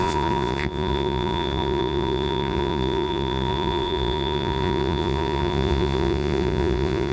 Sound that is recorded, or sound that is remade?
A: remade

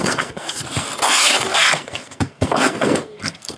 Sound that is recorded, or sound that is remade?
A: remade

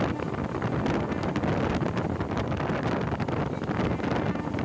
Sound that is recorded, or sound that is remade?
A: recorded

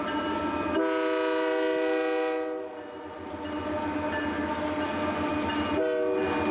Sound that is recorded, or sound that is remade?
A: recorded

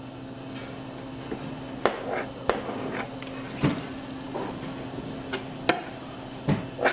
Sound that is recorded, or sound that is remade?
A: recorded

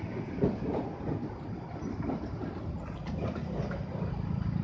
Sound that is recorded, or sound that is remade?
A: remade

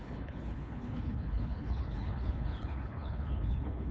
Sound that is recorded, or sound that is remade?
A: remade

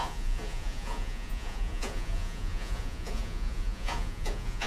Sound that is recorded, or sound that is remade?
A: remade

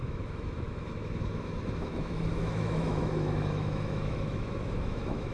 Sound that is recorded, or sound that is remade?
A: remade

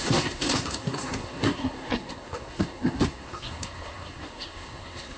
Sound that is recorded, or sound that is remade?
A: remade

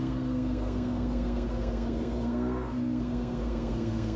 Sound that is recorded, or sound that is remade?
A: remade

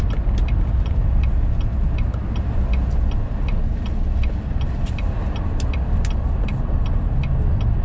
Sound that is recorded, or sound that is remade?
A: recorded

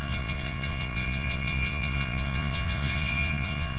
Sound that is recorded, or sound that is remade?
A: remade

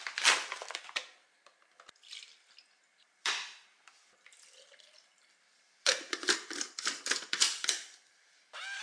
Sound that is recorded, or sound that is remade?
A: recorded